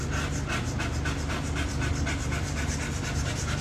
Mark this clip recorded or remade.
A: recorded